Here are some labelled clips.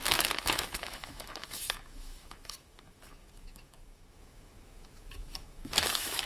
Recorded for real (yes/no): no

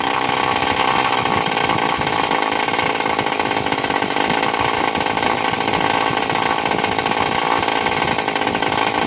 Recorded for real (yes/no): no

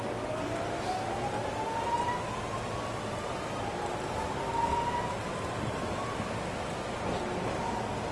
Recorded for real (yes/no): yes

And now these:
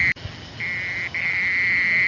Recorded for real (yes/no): yes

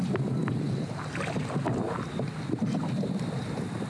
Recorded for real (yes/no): yes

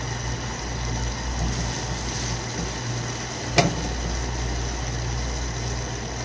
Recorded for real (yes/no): yes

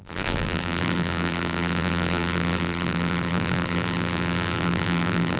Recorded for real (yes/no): no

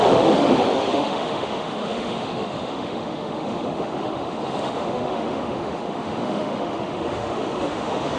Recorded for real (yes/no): no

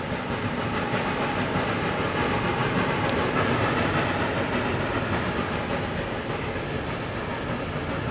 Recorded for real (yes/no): yes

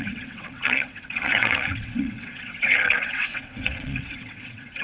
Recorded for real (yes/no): no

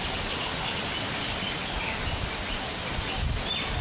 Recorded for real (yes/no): yes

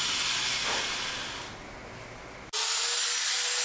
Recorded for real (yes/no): yes